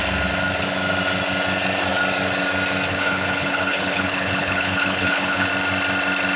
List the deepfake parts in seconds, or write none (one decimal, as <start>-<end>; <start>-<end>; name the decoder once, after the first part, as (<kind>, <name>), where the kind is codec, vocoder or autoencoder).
2.9-5.5 (codec, HILCodec)